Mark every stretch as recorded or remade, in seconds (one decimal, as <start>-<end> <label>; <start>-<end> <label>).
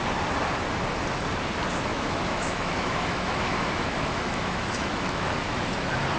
0.0-1.9 recorded; 1.9-5.3 remade; 5.3-6.2 recorded